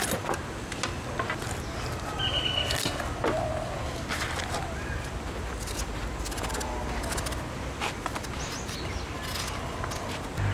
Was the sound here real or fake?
real